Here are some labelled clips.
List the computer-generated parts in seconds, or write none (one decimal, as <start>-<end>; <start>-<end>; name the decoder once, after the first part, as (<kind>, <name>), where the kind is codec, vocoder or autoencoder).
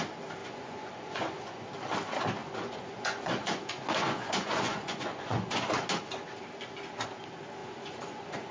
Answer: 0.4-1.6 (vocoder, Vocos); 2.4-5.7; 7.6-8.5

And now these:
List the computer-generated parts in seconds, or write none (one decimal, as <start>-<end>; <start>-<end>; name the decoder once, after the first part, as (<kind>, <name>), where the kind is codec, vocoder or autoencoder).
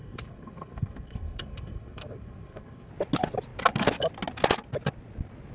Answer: 0.0-2.9 (codec, SNAC)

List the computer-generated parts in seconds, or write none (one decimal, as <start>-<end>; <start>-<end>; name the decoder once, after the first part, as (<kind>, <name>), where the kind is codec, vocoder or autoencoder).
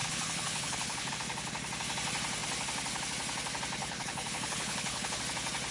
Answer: 0.0-1.1 (codec, HILCodec); 3.8-5.2